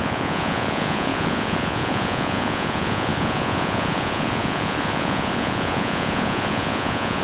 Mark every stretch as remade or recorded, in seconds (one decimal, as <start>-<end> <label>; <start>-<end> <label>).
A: 0.0-7.2 remade